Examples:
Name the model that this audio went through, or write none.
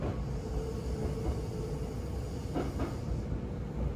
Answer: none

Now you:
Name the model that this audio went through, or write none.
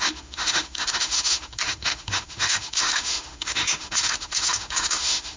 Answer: autoencoder, DAC-VAE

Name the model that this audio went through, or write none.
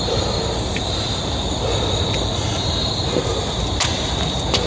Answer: none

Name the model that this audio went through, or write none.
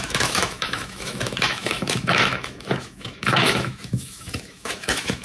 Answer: autoencoder, DAC-VAE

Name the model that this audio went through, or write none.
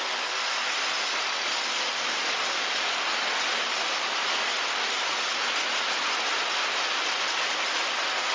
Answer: none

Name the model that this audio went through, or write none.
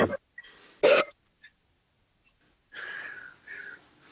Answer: none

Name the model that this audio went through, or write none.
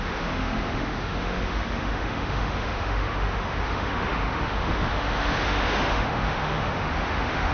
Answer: autoencoder, DAC-VAE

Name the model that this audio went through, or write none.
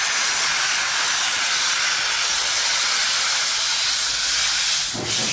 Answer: none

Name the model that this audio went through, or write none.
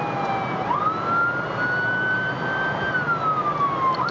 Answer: none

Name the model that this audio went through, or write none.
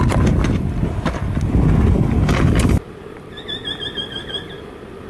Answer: none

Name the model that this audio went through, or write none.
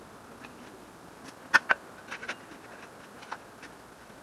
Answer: none